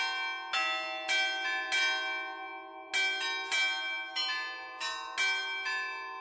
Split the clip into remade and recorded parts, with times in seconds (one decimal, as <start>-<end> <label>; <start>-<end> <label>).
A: 0.0-6.2 recorded